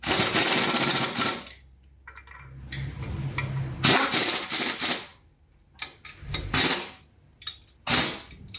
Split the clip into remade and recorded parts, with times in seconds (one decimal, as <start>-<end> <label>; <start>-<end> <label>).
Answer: 0.0-8.6 recorded